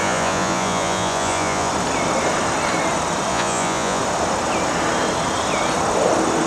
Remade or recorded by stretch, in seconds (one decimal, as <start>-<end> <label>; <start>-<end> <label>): 0.0-1.7 remade; 1.7-3.3 recorded; 3.3-4.0 remade; 4.0-6.5 recorded